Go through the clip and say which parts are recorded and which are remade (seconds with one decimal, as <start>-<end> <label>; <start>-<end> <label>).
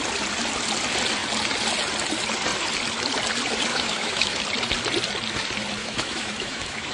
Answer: 0.0-3.7 recorded; 3.7-4.4 remade; 4.4-5.8 recorded; 5.8-6.9 remade